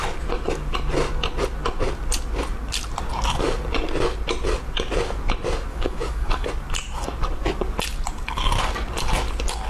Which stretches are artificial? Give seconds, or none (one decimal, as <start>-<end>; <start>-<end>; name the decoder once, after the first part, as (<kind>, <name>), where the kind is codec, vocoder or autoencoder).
5.7-6.5 (codec, DAC)